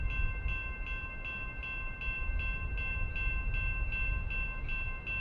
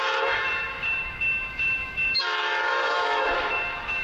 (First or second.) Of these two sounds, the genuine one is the first